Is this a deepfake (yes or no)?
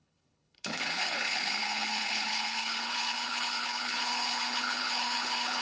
yes